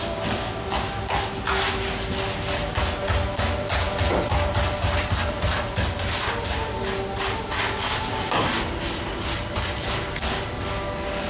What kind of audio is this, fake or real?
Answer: real